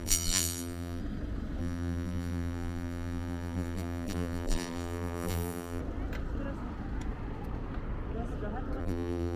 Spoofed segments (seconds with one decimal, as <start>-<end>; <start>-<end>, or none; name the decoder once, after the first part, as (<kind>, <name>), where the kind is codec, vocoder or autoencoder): 0.0-1.0 (vocoder, BigVGAN v2); 1.6-5.8; 8.8-9.4